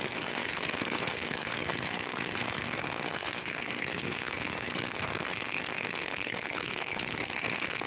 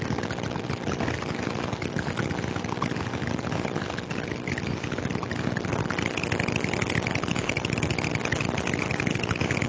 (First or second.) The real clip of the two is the second